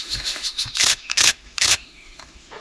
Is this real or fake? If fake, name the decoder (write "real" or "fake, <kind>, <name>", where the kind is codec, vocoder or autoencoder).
fake, autoencoder, DAC-VAE